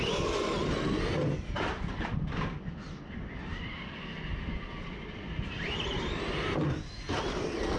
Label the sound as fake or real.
real